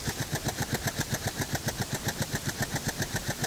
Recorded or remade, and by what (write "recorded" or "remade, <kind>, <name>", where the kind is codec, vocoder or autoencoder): recorded